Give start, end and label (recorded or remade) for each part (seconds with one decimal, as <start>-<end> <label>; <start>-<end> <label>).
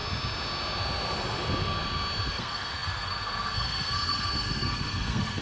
0.0-2.3 recorded; 2.3-5.4 remade